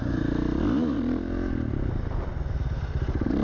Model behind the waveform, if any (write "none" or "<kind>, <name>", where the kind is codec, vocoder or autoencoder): none